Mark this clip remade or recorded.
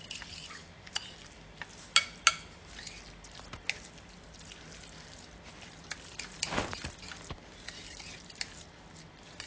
recorded